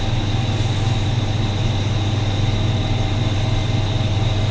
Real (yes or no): yes